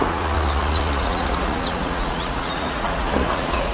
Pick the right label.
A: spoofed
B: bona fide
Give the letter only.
A